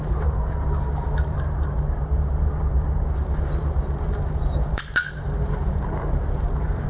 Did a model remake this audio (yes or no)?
yes